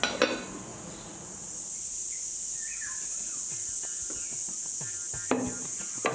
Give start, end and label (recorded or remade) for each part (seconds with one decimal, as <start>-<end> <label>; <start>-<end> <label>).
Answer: 0.0-0.7 recorded; 0.7-2.4 remade; 2.4-6.1 recorded